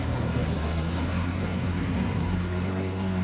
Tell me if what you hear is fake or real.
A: fake